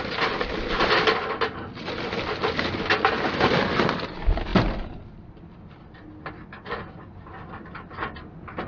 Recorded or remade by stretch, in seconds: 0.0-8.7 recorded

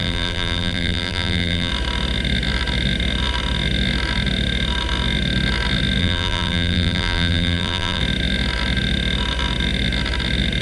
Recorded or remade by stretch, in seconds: 0.0-1.7 remade; 1.7-6.0 recorded; 6.0-8.0 remade; 8.0-10.6 recorded

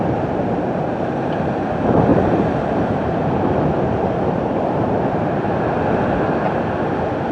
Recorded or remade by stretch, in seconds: 0.0-2.1 recorded; 2.1-5.4 remade; 5.4-7.3 recorded